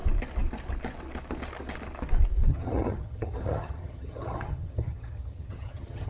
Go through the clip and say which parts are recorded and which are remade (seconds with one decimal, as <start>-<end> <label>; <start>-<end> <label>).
0.0-2.5 recorded; 2.5-6.1 remade